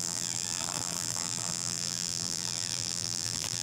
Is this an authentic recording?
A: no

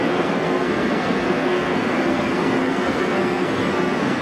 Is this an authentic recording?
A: no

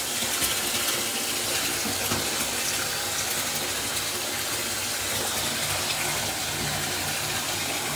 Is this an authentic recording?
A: yes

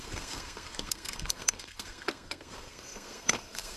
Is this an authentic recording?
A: no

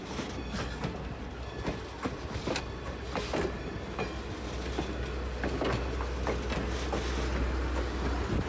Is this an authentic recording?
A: yes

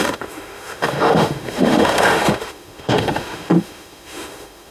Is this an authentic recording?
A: no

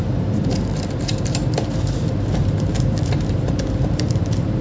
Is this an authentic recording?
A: no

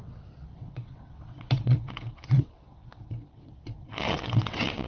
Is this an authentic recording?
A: no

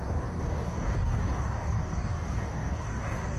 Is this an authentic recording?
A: no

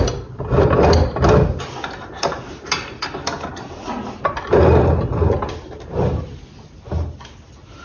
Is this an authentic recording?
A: yes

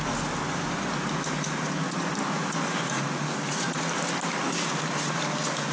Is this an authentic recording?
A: yes